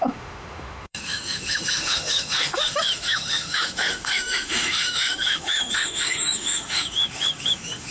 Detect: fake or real fake